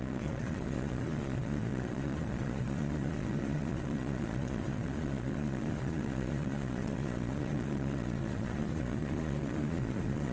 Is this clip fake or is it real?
fake